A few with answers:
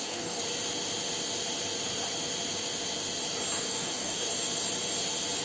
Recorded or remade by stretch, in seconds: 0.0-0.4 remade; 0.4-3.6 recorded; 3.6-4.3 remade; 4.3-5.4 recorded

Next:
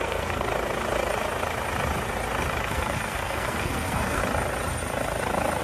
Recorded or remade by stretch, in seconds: 0.0-0.5 remade; 0.5-2.7 recorded; 2.7-4.2 remade; 4.2-5.6 recorded

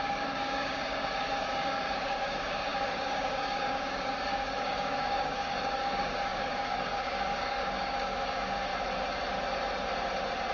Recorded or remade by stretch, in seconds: 0.0-8.7 remade; 8.7-10.5 recorded

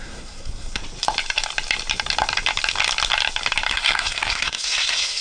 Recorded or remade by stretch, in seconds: 0.0-0.8 remade; 0.8-3.7 recorded; 3.7-5.2 remade

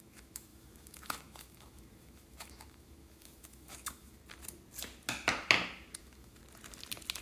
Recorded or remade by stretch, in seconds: 0.0-4.2 remade; 4.2-6.0 recorded; 6.0-6.4 remade; 6.4-7.2 recorded

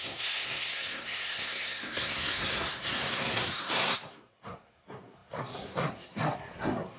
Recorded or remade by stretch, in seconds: 0.0-7.0 remade

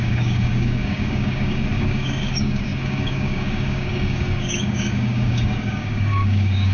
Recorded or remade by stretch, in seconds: 0.0-6.7 remade

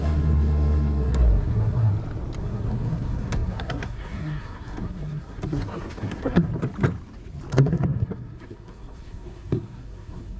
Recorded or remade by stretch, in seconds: 0.0-1.9 remade; 1.9-2.4 recorded; 2.4-6.5 remade; 6.5-7.5 recorded; 7.5-10.4 remade